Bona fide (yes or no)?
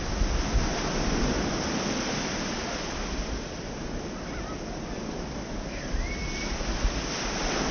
yes